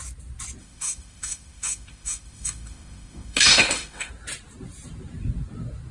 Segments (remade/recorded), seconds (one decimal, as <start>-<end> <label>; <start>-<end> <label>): 0.0-0.6 recorded; 0.6-4.1 remade; 4.1-5.9 recorded